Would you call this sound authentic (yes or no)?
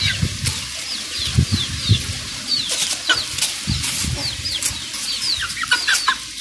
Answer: yes